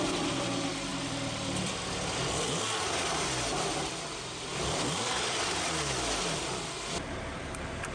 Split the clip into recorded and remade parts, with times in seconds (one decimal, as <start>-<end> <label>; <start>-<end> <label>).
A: 0.0-0.9 recorded; 0.9-1.8 remade; 1.8-4.5 recorded; 4.5-6.2 remade; 6.2-7.9 recorded